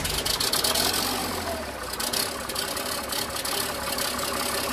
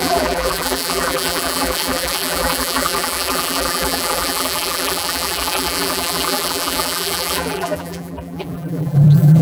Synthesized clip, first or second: second